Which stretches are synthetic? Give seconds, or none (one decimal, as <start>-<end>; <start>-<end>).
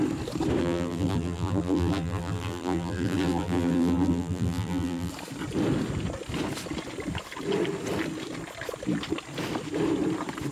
0.6-5.1